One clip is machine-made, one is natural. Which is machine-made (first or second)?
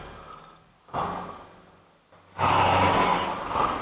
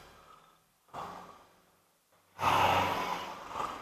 second